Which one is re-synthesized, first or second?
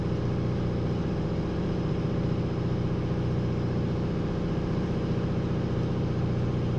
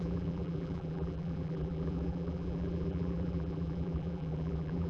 second